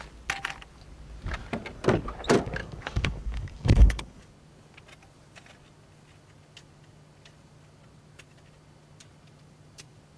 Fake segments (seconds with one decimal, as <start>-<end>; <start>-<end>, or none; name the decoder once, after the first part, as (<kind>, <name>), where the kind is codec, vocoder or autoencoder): 2.6-4.3 (codec, DAC)